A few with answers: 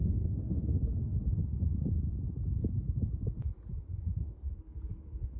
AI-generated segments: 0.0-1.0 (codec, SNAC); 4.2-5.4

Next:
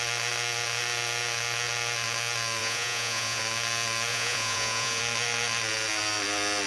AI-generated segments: 2.6-3.4 (vocoder, Vocos); 4.1-5.0

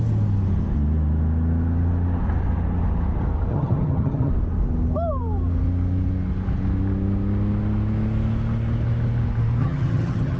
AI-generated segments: 3.5-4.3 (vocoder, HiFi-GAN); 9.6-10.4

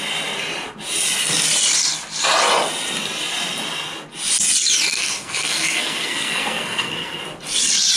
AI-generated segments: 4.9-7.2 (codec, SNAC)

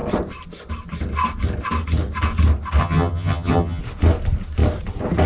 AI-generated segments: 2.8-3.8 (vocoder, HiFi-GAN)